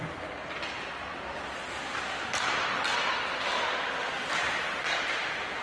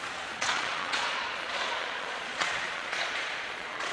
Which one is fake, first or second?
second